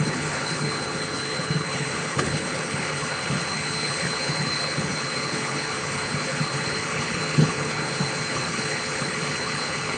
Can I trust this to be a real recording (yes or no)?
no